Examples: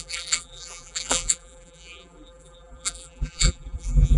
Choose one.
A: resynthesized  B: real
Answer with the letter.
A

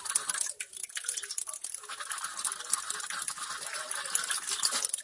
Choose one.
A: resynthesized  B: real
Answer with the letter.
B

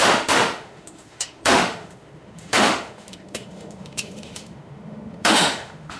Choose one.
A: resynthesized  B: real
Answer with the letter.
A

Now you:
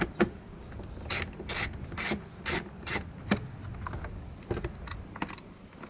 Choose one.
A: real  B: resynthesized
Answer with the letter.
A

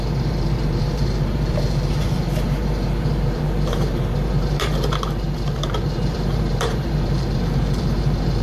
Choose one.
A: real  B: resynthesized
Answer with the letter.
B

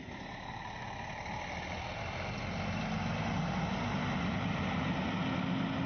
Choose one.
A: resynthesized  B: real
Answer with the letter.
B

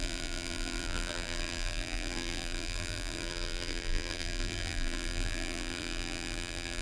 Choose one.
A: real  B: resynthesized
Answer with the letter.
B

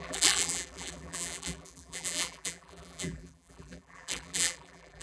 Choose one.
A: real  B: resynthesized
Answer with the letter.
B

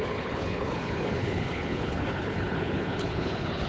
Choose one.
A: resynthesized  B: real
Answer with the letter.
A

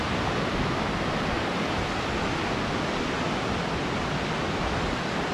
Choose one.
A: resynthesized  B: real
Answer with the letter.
B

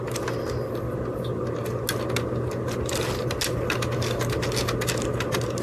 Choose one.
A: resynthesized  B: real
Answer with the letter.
B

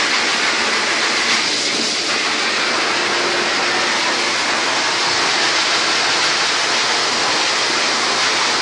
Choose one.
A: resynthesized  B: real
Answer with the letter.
B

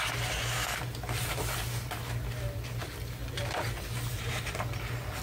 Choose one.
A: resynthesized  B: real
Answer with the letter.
B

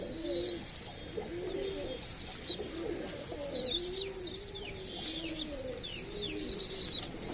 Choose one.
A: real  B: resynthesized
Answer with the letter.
A